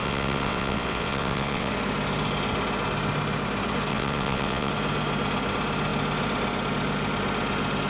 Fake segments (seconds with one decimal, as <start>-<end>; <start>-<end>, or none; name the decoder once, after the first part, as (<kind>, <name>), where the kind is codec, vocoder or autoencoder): 0.0-1.7 (vocoder, WaveNeXt); 3.9-4.7